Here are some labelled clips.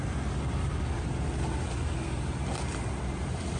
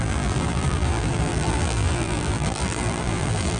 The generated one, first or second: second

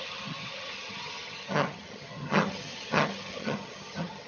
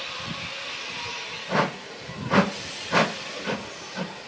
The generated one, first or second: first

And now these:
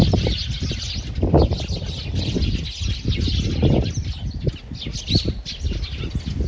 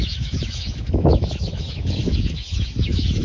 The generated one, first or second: second